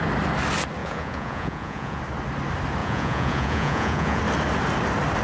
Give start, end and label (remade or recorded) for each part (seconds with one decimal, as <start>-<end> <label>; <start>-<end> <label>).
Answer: 0.0-0.8 recorded; 0.8-2.0 remade; 2.0-2.8 recorded; 2.8-4.2 remade; 4.2-5.2 recorded